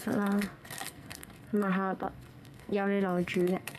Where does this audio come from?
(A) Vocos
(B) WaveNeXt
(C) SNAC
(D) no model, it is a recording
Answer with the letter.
C